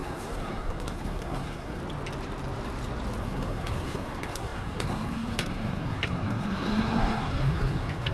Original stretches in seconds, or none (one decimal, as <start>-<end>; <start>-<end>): 1.8-3.2